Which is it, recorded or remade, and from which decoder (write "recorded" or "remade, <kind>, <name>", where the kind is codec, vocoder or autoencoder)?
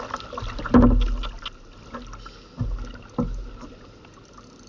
recorded